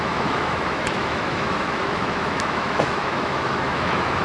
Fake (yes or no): yes